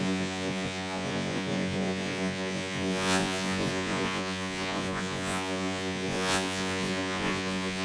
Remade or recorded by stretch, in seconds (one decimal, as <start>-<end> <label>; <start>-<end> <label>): 0.0-7.8 remade